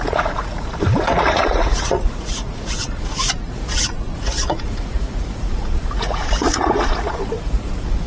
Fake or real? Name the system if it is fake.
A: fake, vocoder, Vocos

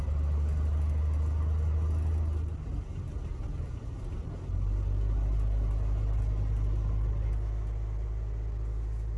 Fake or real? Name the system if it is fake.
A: real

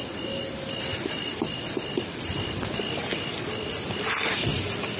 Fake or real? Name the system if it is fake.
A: real